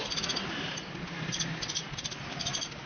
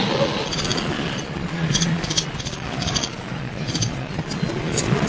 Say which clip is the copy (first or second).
second